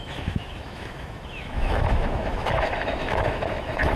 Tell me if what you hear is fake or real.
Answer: fake